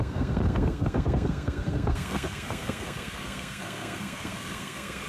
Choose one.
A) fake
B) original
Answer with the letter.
A